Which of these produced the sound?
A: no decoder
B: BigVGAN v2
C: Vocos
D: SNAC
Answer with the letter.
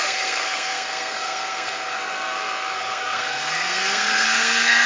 D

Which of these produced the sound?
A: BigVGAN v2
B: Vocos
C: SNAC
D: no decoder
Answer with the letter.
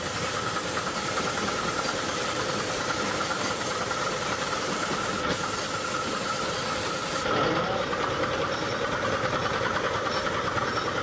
A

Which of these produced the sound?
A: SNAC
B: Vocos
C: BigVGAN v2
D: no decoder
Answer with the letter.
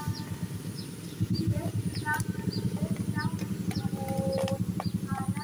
D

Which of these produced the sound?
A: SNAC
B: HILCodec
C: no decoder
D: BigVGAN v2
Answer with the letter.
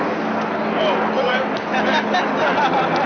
C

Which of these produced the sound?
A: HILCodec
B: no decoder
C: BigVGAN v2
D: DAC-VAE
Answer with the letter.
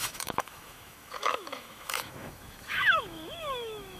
D